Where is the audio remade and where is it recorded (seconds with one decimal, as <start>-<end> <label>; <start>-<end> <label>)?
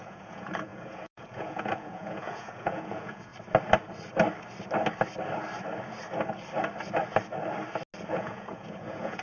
0.0-3.3 remade; 3.3-8.1 recorded; 8.1-9.2 remade